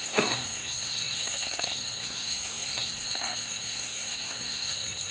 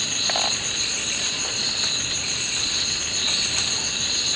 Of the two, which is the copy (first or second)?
first